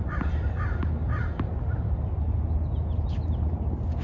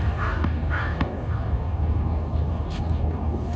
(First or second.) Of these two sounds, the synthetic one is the second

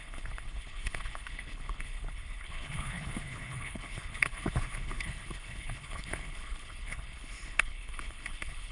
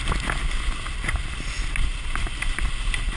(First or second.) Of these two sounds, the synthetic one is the first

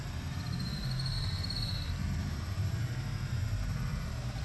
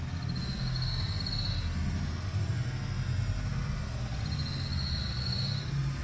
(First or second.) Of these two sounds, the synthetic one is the first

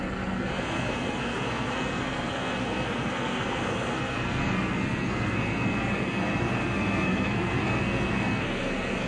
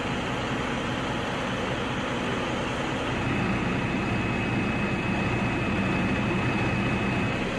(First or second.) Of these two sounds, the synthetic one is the first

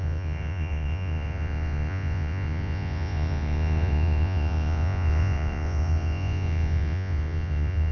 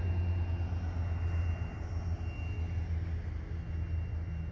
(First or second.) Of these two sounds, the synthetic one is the first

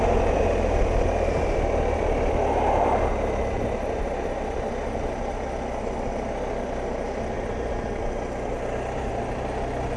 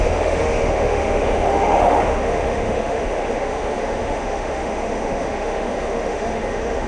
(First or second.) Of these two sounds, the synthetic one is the second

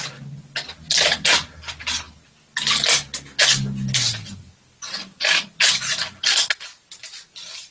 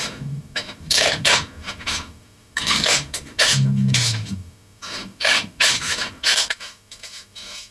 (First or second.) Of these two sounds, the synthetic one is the second